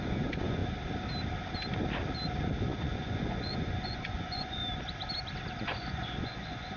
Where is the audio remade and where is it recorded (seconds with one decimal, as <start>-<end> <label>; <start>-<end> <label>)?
0.0-0.6 remade; 0.6-2.6 recorded; 2.6-4.6 remade; 4.6-5.6 recorded; 5.6-6.8 remade